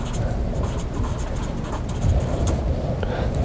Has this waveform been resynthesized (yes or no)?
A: no